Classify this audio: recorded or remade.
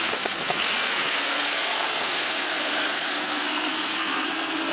remade